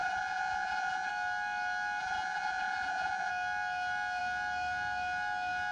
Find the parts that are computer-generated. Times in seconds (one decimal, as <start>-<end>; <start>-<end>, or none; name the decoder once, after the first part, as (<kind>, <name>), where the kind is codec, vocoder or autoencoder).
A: 0.0-1.1 (vocoder, Vocos); 2.0-3.3

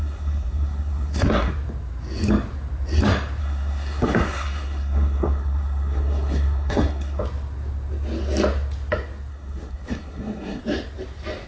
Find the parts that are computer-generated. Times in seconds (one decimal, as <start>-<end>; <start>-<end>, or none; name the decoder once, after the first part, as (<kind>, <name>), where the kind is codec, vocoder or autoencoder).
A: 0.0-1.5 (codec, SNAC); 3.4-7.2; 9.3-10.6

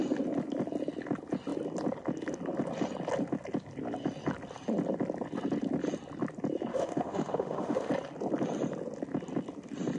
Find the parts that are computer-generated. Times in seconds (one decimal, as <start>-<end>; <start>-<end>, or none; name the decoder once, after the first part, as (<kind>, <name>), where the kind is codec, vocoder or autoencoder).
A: 6.7-7.9 (autoencoder, DAC-VAE)

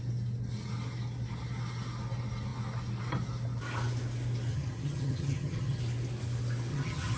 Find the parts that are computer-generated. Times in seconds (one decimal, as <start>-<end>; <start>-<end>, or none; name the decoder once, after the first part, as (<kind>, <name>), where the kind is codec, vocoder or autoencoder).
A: 4.5-5.8 (vocoder, HiFi-GAN); 6.7-7.2

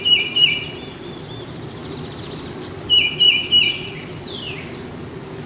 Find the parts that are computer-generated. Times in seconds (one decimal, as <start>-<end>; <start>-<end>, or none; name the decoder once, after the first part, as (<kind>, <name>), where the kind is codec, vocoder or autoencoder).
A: 0.0-1.8 (vocoder, BigVGAN v2); 2.9-5.5